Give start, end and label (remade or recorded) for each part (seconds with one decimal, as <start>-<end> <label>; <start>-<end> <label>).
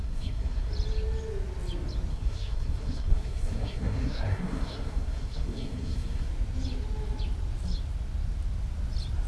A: 0.0-0.7 remade; 0.7-2.1 recorded; 2.1-6.3 remade; 6.3-9.3 recorded